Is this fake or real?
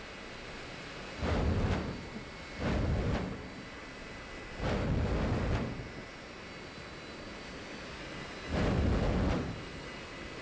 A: real